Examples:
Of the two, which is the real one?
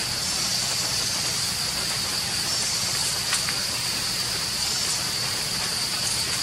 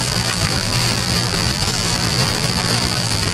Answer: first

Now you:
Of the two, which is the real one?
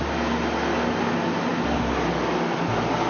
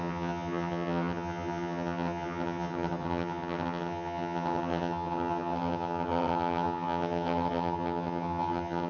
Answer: first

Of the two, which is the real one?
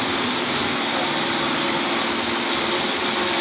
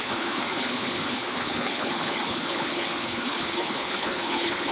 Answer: first